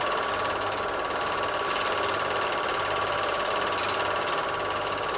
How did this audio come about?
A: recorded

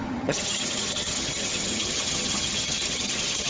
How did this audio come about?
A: remade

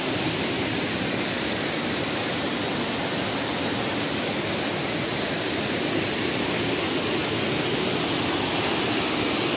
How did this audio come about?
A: recorded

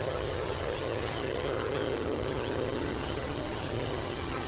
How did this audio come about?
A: remade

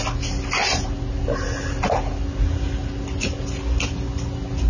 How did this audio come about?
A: recorded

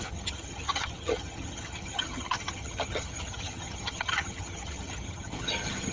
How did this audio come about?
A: remade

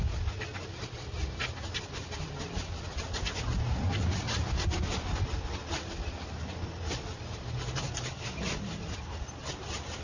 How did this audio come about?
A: recorded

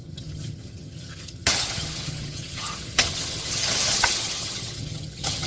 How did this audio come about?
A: remade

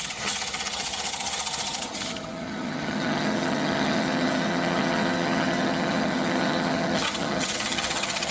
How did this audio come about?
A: remade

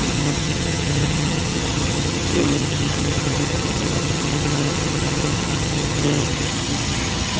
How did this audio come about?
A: remade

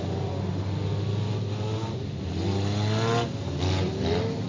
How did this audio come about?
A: recorded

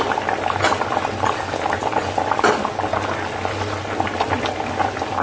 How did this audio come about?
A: recorded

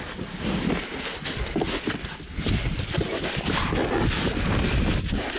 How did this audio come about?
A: recorded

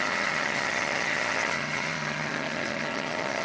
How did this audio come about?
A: remade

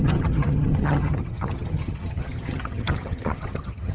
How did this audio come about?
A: remade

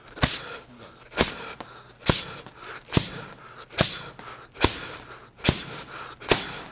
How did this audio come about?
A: recorded